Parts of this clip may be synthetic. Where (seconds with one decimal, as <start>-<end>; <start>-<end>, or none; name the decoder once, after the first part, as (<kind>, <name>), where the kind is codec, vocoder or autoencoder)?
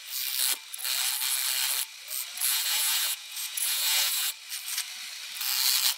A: 2.5-4.3 (vocoder, Vocos)